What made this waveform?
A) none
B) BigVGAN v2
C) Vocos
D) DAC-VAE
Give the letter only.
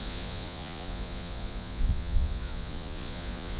C